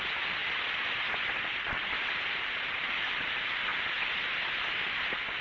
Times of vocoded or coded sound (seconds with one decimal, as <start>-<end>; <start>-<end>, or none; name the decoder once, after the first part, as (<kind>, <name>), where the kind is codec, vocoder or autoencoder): none